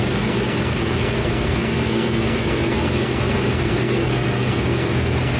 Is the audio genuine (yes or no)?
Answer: no